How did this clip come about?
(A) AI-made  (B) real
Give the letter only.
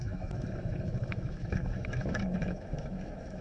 A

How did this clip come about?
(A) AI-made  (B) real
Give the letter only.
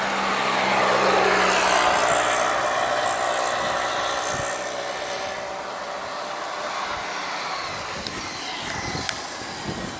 B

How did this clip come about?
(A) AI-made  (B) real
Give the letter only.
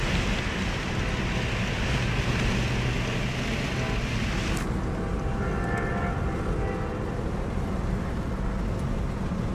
B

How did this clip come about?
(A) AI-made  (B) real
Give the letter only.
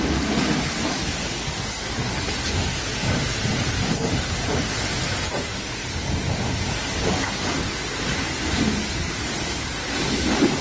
B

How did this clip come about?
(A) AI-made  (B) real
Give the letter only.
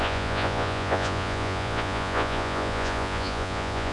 A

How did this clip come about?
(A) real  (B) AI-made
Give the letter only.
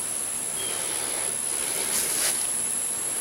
A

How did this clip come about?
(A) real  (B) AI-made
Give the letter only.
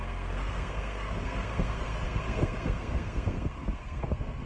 B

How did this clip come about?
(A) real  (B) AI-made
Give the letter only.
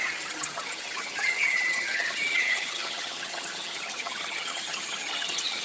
B